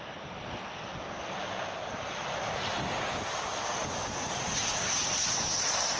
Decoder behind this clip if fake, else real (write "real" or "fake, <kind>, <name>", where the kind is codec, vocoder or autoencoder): real